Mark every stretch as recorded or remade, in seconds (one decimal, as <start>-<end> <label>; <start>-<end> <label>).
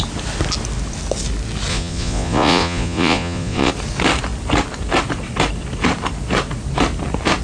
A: 0.0-1.7 recorded; 1.7-3.7 remade; 3.7-7.4 recorded